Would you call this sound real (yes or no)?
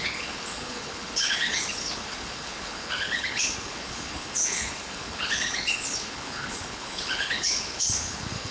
no